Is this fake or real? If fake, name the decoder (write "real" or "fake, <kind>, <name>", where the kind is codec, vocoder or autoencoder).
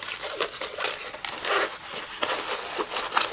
real